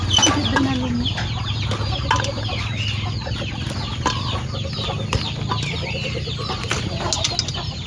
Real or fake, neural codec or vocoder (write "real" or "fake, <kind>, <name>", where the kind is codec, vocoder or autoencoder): real